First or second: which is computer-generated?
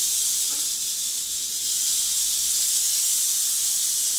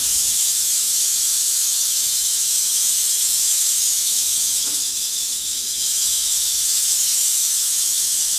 second